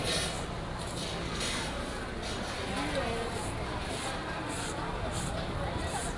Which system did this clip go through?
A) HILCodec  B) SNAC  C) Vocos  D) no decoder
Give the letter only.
D